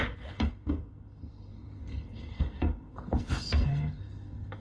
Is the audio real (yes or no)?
no